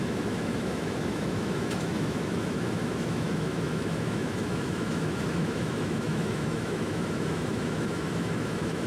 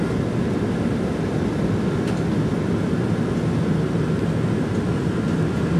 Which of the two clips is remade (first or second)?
first